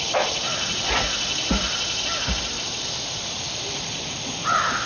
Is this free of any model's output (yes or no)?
no